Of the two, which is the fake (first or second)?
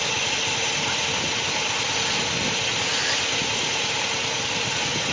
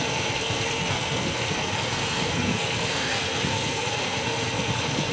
second